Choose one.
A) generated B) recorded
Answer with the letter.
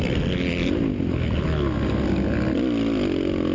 B